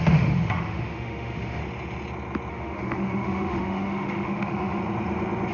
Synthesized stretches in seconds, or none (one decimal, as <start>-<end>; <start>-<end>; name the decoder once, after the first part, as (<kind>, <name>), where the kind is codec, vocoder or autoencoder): 0.0-1.6 (autoencoder, DAC-VAE); 2.5-4.8